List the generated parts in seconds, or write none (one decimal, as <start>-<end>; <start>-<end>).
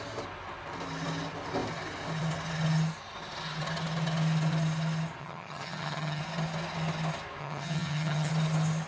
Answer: 5.2-6.2; 7.4-8.3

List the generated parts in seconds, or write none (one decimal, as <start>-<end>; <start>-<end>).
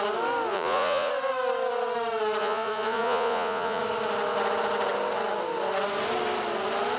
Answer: 0.5-1.1; 2.4-3.8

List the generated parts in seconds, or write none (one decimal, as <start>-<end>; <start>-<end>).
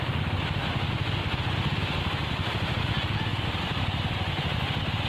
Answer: 3.3-5.1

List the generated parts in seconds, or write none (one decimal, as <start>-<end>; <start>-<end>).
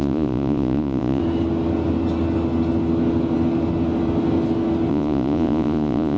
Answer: 0.0-1.2; 4.9-6.2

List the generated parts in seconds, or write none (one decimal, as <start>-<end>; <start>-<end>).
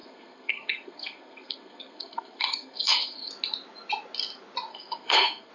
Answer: 0.0-3.3; 4.7-5.5